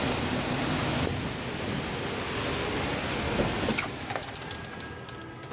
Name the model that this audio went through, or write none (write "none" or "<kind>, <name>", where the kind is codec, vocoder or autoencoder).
none